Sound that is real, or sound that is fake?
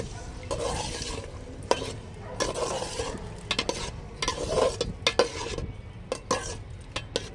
real